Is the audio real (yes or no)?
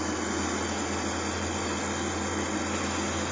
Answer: yes